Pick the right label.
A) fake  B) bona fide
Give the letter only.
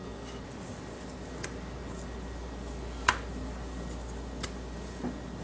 B